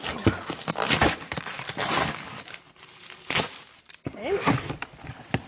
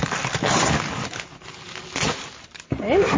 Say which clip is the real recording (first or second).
second